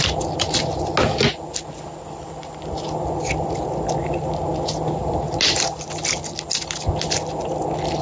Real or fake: real